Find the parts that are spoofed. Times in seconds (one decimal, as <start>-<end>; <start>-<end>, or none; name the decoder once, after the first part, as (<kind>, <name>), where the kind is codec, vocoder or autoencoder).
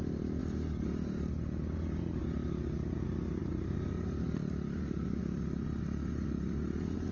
3.4-5.2 (vocoder, BigVGAN v2)